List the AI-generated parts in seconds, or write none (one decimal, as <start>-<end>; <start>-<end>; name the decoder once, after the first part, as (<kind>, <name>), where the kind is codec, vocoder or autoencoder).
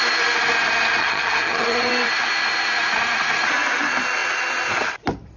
1.0-1.9 (vocoder, HiFi-GAN)